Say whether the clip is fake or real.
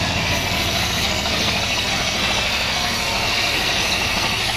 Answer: fake